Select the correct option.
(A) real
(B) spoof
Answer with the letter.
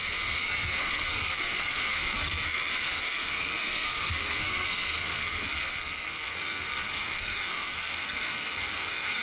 B